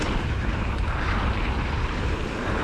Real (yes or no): no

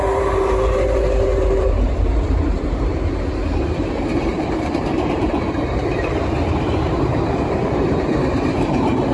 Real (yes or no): no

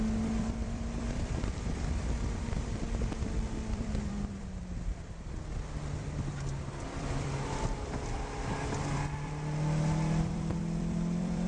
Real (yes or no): no